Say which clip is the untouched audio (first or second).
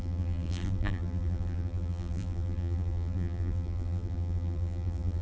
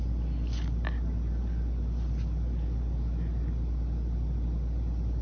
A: second